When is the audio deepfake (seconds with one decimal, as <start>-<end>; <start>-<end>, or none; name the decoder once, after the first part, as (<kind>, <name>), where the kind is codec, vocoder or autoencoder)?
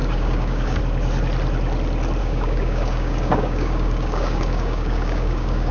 0.0-0.8 (codec, DAC); 2.2-5.7